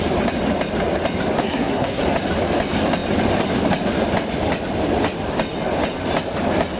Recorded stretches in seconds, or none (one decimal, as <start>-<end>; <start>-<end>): 0.0-1.4; 2.0-6.8